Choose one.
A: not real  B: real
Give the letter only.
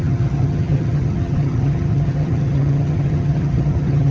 A